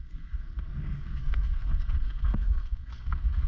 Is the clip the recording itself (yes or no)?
no